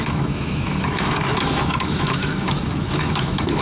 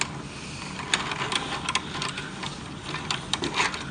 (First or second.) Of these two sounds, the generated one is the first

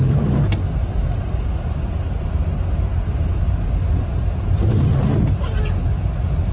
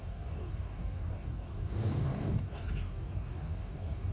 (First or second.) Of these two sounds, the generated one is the second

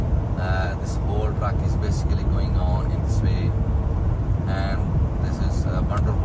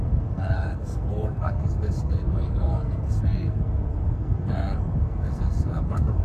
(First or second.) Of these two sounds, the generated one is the second